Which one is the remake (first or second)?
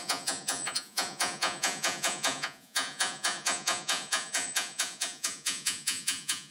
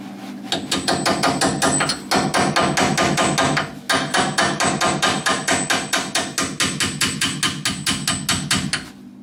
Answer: first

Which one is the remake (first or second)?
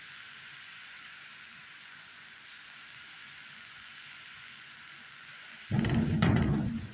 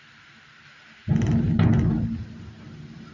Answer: first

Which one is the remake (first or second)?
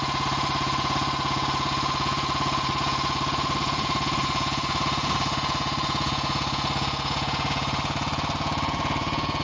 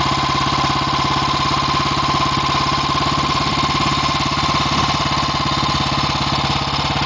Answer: first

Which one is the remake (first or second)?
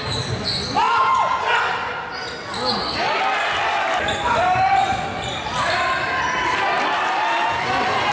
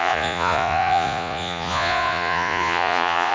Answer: second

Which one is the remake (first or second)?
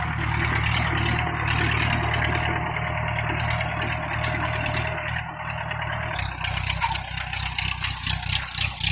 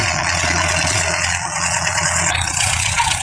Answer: second